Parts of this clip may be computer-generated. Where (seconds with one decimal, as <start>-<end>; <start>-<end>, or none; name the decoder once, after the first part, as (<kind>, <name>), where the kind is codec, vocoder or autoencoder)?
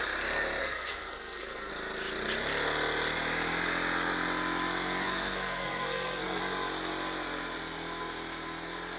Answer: 0.6-1.7 (codec, SNAC); 5.0-6.4